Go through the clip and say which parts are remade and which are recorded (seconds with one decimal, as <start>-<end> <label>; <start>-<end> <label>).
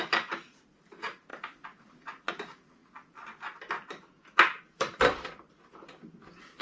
0.0-1.3 remade; 1.3-2.3 recorded; 2.3-2.8 remade; 2.8-4.6 recorded; 4.6-6.6 remade